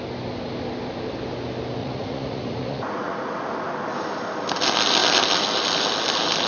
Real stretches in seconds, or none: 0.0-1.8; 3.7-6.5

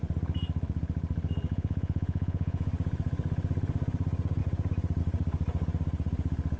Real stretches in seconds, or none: 0.0-1.5; 2.7-6.6